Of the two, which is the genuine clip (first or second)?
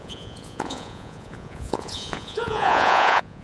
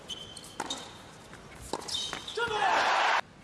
second